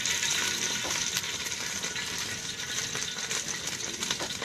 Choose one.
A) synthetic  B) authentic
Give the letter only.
B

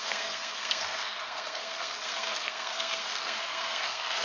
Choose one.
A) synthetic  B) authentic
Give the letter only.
A